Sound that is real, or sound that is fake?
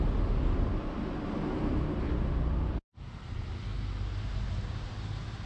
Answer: real